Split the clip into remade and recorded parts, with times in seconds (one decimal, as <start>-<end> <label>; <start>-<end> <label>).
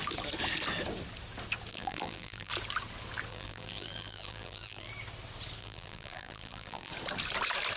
0.0-1.7 recorded; 1.7-2.5 remade; 2.5-3.3 recorded; 3.3-4.9 remade; 4.9-5.6 recorded; 5.6-6.9 remade; 6.9-7.8 recorded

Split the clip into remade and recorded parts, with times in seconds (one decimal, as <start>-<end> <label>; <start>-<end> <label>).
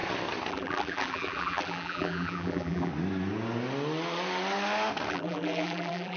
0.0-0.5 recorded; 0.5-2.9 remade; 2.9-5.1 recorded; 5.1-6.2 remade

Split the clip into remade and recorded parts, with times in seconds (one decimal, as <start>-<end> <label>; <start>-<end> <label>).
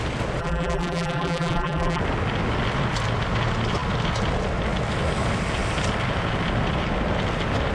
0.0-0.4 recorded; 0.4-2.0 remade; 2.0-7.7 recorded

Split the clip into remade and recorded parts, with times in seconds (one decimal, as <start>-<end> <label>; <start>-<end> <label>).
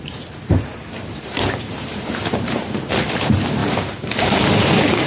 0.0-5.1 remade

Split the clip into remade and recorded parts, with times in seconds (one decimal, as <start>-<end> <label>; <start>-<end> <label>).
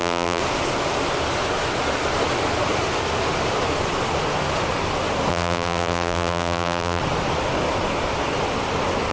0.0-0.4 remade; 0.4-5.3 recorded; 5.3-7.0 remade; 7.0-9.1 recorded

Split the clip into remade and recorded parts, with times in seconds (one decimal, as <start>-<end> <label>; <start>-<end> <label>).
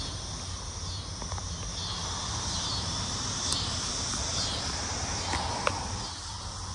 0.0-2.0 recorded; 2.0-2.7 remade; 2.7-4.3 recorded; 4.3-4.8 remade; 4.8-6.7 recorded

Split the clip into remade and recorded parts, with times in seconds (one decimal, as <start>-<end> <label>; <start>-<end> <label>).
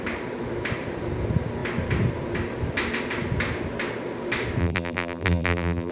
0.0-4.6 recorded; 4.6-5.9 remade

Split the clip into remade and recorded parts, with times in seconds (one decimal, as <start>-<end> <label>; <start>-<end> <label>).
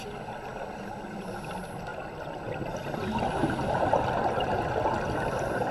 0.0-1.9 recorded; 1.9-2.5 remade; 2.5-3.4 recorded; 3.4-4.6 remade; 4.6-5.7 recorded